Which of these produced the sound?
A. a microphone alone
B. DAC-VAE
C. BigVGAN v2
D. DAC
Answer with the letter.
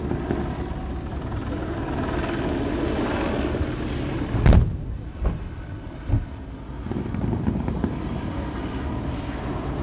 A